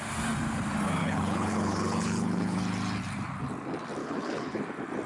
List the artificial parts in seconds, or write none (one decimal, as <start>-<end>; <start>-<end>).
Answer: 1.0-2.6; 4.0-4.6